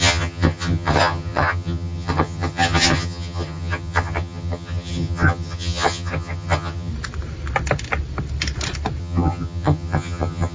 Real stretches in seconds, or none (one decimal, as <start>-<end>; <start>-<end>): 6.9-9.0